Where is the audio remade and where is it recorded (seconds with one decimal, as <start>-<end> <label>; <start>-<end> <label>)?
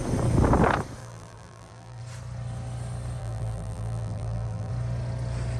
0.0-1.0 recorded; 1.0-2.0 remade; 2.0-3.2 recorded; 3.2-4.7 remade; 4.7-5.6 recorded